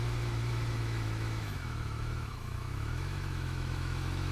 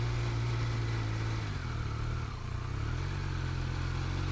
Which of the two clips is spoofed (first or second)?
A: first